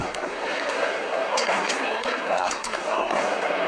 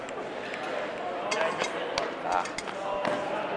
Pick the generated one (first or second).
first